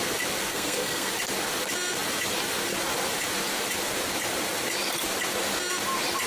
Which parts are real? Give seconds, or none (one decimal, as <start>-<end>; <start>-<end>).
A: 0.0-0.5; 1.1-6.3